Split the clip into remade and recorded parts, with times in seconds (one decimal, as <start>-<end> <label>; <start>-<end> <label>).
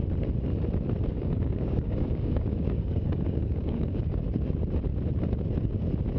0.0-1.1 recorded; 1.1-4.2 remade; 4.2-6.2 recorded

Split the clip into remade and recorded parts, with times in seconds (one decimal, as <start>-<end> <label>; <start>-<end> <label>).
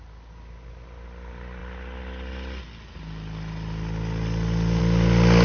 0.0-5.4 recorded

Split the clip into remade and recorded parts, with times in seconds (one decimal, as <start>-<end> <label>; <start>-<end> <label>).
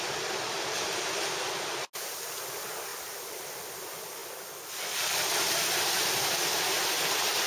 0.0-2.9 recorded; 2.9-3.7 remade; 3.7-7.5 recorded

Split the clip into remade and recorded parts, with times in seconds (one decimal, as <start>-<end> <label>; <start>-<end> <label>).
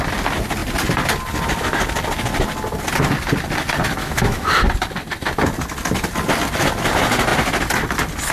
0.0-4.0 recorded; 4.0-4.5 remade; 4.5-8.3 recorded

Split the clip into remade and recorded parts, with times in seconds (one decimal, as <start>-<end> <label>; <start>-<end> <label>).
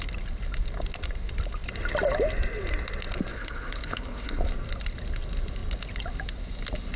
0.0-3.3 recorded; 3.3-4.5 remade; 4.5-7.0 recorded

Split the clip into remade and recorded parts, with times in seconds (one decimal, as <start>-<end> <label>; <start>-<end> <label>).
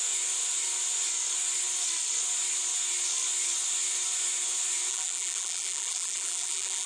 0.0-4.9 recorded; 4.9-6.9 remade